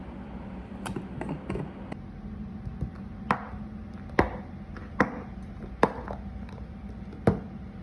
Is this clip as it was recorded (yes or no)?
yes